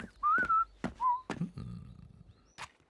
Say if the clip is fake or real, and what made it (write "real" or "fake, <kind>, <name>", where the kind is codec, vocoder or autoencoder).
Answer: real